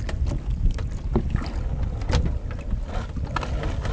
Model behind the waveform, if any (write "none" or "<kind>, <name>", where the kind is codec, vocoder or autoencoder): none